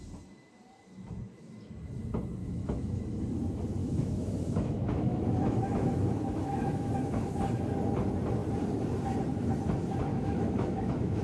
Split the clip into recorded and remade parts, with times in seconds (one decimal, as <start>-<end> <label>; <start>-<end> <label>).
0.0-2.4 recorded; 2.4-3.0 remade; 3.0-3.8 recorded; 3.8-7.4 remade; 7.4-10.1 recorded; 10.1-11.2 remade